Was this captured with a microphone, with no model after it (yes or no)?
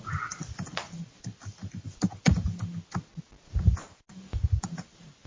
yes